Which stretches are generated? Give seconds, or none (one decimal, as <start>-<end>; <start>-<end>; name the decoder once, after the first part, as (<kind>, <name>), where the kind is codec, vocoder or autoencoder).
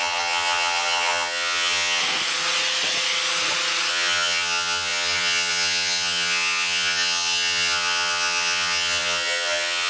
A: 0.0-2.0 (vocoder, HiFi-GAN); 3.9-9.9